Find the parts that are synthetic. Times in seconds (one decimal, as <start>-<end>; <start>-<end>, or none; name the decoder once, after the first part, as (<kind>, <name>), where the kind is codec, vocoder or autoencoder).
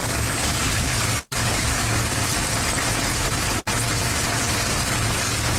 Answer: 0.0-2.2 (codec, DAC); 4.5-5.6